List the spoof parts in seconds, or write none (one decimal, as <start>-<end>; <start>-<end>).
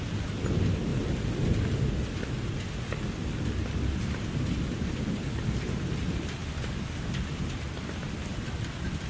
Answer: none